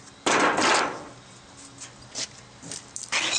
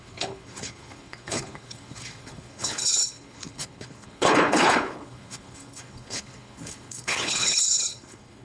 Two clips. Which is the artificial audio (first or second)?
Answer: second